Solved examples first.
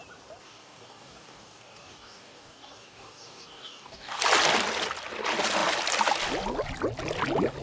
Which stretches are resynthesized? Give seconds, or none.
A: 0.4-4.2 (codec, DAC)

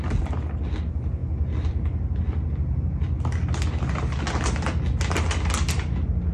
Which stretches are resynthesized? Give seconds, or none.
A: none